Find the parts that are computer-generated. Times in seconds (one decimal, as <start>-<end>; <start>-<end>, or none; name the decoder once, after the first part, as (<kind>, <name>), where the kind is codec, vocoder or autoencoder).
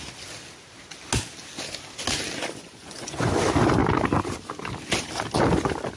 2.6-3.3 (vocoder, Vocos)